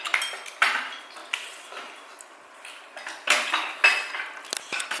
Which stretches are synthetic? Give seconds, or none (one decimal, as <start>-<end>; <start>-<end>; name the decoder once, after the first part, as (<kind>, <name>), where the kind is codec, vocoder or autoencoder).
none